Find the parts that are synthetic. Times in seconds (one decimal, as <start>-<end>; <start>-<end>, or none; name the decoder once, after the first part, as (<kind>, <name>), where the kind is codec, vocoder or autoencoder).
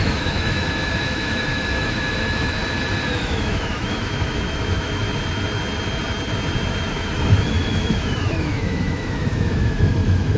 0.0-2.6 (autoencoder, DAC-VAE); 3.2-5.0; 6.9-10.4